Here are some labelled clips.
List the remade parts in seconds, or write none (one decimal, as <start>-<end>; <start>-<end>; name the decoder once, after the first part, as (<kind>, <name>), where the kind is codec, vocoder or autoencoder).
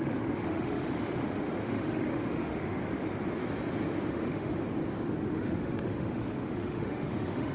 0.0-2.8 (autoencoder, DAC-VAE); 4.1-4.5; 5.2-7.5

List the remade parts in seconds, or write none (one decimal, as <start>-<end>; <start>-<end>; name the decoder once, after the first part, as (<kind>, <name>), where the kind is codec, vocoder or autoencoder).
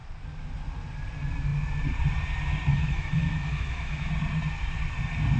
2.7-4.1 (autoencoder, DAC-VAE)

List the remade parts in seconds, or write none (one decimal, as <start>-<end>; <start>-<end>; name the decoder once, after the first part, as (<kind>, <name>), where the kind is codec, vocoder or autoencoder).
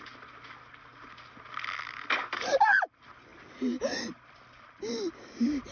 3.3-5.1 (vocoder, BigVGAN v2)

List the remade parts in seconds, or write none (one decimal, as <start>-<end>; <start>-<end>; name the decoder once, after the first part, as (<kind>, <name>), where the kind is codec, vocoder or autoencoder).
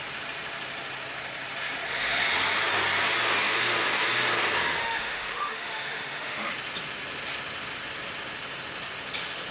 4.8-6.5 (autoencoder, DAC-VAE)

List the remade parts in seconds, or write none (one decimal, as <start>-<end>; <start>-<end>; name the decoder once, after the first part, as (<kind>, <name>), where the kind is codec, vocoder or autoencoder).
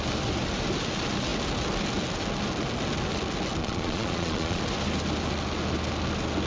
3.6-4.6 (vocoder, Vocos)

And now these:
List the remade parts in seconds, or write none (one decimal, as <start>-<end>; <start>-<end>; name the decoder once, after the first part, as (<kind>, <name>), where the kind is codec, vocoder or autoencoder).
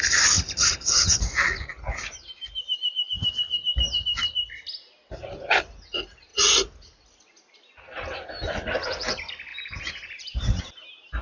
9.5-10.6 (vocoder, BigVGAN v2)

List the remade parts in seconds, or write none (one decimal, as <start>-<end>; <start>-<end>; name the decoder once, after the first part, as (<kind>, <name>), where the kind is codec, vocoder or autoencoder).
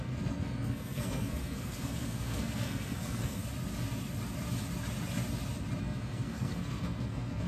0.0-3.4 (codec, SNAC); 5.8-7.5